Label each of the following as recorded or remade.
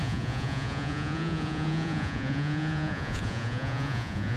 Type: remade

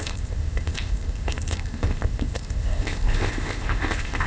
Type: remade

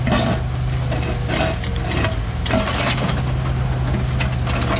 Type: recorded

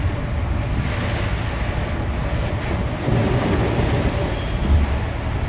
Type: recorded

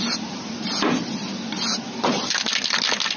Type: recorded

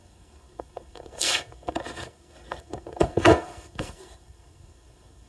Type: remade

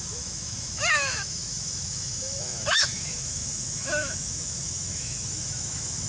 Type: remade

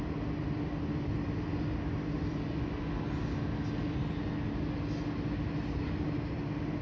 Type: recorded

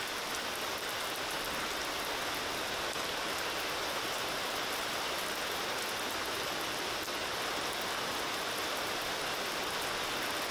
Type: recorded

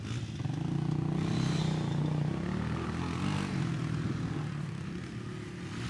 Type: recorded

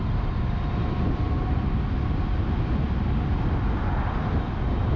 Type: recorded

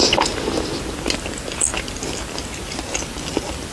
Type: recorded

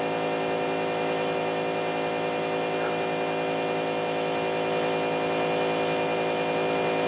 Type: recorded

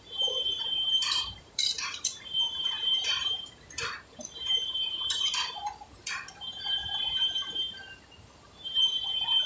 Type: remade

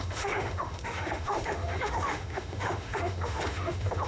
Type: remade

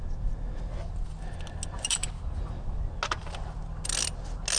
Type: recorded